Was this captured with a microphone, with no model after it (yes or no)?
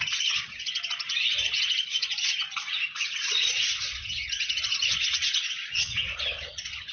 no